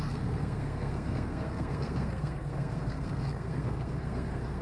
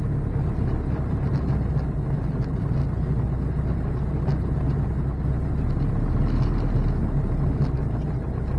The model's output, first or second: first